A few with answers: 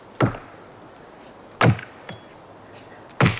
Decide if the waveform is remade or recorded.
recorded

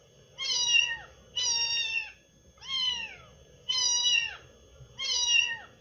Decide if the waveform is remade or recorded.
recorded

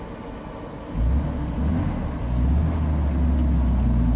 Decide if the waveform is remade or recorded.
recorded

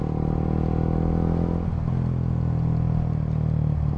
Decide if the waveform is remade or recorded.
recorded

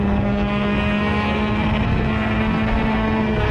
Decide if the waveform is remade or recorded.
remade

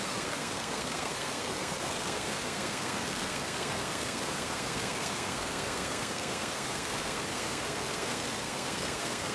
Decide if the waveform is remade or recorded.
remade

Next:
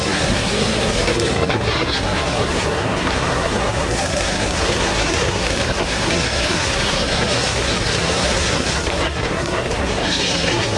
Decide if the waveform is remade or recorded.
remade